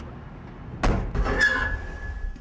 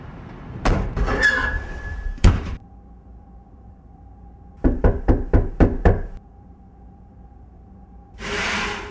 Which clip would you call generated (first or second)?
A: second